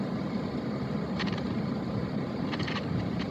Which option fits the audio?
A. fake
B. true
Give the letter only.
A